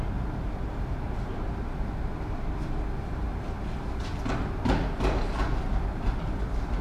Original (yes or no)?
yes